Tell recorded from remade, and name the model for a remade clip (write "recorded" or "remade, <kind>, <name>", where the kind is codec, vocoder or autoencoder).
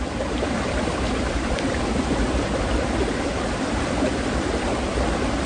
remade, vocoder, BigVGAN v2